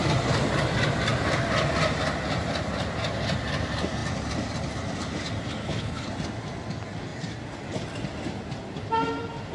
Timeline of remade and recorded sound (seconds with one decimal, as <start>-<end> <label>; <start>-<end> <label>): 0.0-5.6 recorded; 5.6-6.1 remade; 6.1-9.5 recorded